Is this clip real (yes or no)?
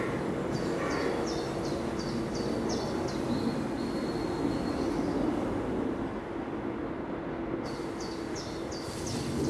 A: yes